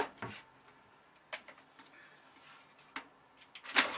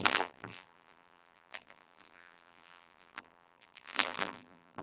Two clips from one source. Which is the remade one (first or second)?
second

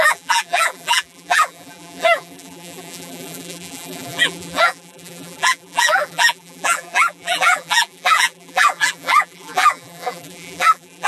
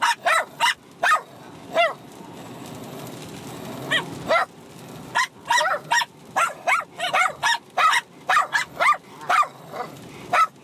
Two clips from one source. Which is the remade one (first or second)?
first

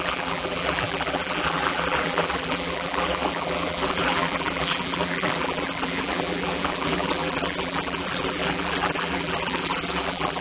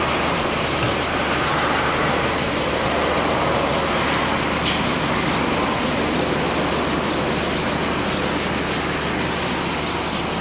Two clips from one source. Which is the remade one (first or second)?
first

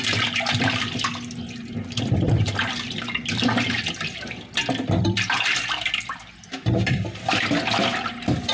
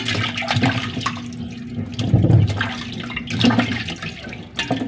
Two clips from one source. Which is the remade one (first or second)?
first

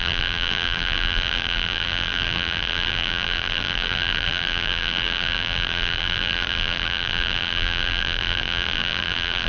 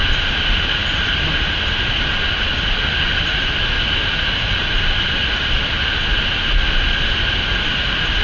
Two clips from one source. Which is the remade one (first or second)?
first